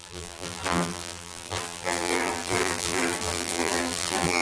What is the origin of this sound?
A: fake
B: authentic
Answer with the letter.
A